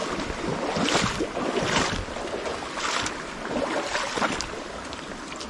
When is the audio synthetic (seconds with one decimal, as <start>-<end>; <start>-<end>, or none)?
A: none